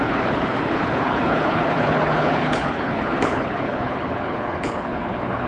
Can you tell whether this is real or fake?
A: fake